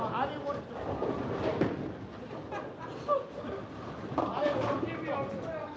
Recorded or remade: recorded